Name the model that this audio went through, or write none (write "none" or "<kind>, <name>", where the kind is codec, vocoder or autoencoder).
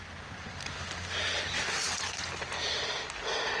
none